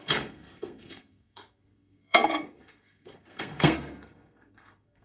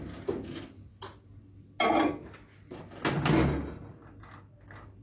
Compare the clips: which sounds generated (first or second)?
first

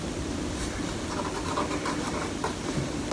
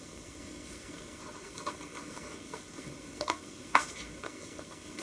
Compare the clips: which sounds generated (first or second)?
second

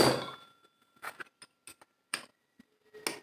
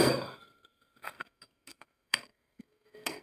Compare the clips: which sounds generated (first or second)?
second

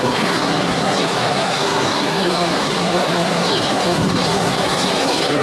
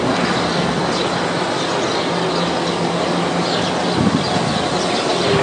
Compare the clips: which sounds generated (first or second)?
first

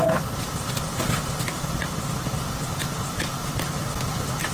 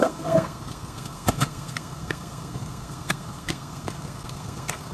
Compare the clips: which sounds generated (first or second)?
second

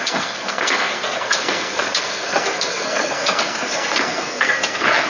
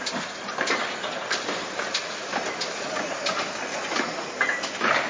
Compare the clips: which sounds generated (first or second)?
first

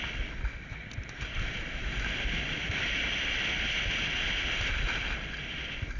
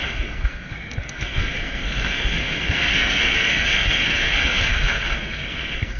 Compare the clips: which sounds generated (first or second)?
second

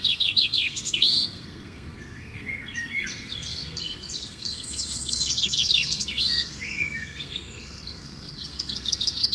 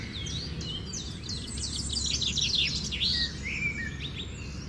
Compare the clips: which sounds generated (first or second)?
first